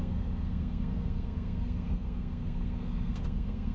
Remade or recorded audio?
remade